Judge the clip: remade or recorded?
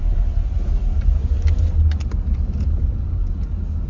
recorded